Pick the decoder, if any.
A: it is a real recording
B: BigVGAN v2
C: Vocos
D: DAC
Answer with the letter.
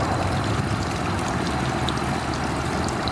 B